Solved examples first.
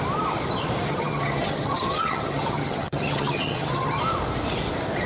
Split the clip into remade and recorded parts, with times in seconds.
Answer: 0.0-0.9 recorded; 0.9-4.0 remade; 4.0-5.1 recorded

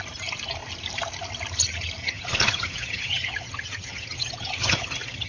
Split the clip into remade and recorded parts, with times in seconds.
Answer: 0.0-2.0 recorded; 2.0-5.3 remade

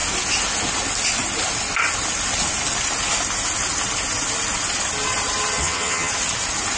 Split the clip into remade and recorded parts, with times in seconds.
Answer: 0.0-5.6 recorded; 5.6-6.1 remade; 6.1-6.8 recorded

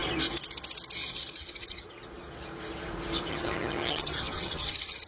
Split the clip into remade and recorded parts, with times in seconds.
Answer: 0.0-1.4 recorded; 1.4-2.0 remade; 2.0-3.3 recorded; 3.3-5.1 remade

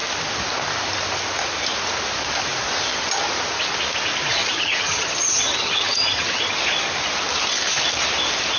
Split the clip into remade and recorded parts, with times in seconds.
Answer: 0.0-4.4 recorded; 4.4-6.5 remade; 6.5-8.6 recorded

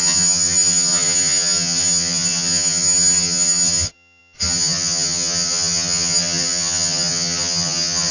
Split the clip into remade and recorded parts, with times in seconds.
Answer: 0.0-8.1 remade

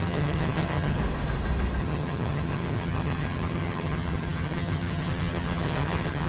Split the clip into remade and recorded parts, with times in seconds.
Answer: 0.0-1.0 remade; 1.0-1.8 recorded; 1.8-6.3 remade